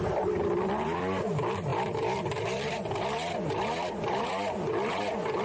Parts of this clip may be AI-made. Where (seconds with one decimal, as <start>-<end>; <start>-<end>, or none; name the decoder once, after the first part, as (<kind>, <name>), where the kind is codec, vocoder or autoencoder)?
none